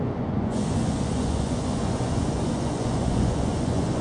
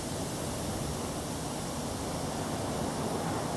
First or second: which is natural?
second